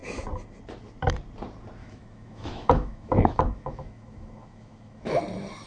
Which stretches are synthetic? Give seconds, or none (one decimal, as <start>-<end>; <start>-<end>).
1.8-5.2